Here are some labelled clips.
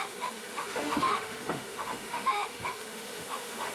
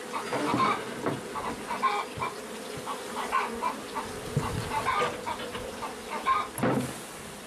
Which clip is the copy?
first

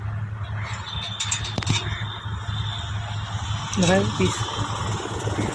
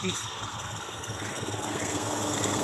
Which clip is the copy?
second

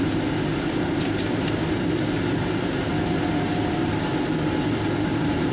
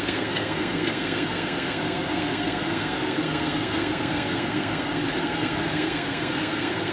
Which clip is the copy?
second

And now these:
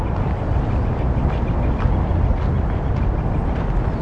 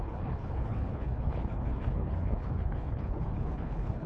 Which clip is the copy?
second